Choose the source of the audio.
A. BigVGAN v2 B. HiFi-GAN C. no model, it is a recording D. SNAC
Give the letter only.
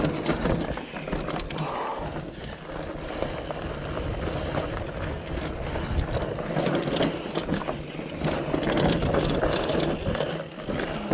C